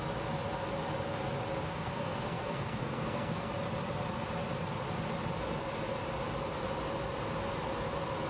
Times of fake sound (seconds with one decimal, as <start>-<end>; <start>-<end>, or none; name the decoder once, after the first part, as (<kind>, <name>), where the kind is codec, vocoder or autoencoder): 1.7-3.5 (codec, SNAC)